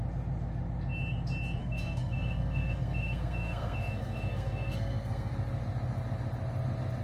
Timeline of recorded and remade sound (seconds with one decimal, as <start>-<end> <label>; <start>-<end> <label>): 0.0-1.6 recorded; 1.6-5.3 remade; 5.3-7.0 recorded

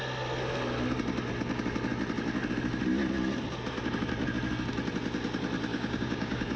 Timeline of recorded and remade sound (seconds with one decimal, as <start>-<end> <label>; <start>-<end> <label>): 0.0-5.7 recorded; 5.7-6.6 remade

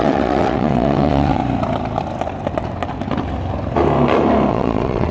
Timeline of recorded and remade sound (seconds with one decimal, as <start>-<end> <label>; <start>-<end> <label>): 0.0-1.4 remade; 1.4-4.5 recorded; 4.5-5.1 remade